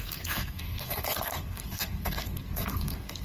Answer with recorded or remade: remade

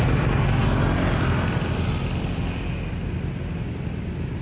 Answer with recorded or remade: recorded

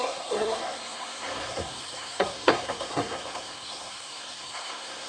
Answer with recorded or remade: remade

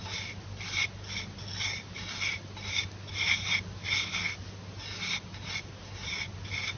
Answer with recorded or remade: recorded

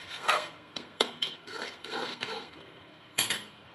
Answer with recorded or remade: remade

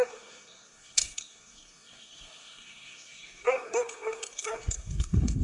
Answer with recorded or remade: remade